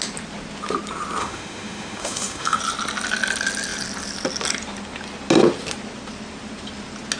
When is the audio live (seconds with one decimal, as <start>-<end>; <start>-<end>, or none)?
0.0-1.2; 2.6-7.2